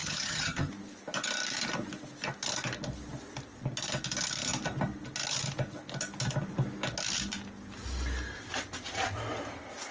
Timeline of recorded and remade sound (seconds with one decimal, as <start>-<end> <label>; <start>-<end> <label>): 0.0-0.7 remade; 0.7-9.9 recorded

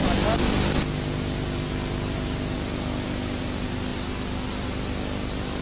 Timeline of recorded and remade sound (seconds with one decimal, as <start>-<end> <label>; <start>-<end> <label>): 0.0-5.6 recorded

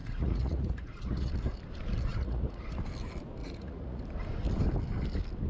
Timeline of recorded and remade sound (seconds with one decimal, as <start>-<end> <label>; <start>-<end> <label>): 0.0-1.3 remade; 1.3-2.1 recorded; 2.1-2.6 remade; 2.6-3.4 recorded; 3.4-4.0 remade; 4.0-5.5 recorded

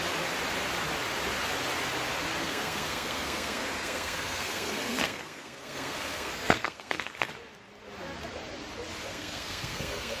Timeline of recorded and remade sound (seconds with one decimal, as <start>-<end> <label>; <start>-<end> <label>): 0.0-2.4 recorded; 2.4-7.3 remade; 7.3-9.1 recorded; 9.1-10.2 remade